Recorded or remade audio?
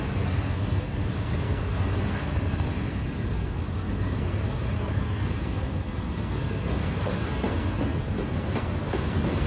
remade